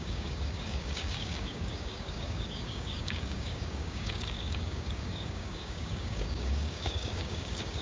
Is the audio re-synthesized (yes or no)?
yes